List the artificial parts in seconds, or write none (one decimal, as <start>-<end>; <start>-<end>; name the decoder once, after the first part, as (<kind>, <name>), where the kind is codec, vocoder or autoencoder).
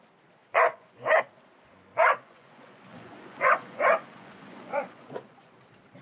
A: 0.4-1.2 (vocoder, Vocos); 2.0-5.6